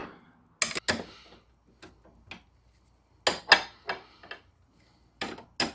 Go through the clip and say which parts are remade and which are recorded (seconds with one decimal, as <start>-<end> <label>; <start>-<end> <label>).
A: 0.0-5.7 recorded